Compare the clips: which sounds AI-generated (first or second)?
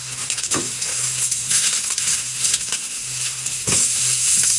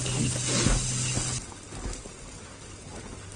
first